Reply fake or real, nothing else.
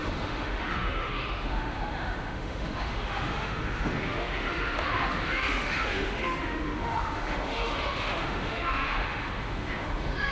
fake